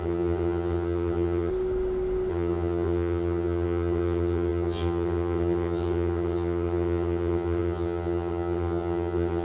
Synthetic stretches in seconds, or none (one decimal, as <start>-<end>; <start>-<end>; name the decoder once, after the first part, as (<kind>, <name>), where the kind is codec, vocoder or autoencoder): 0.0-1.5 (vocoder, HiFi-GAN); 2.3-9.4